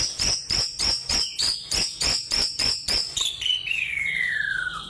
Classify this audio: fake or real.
fake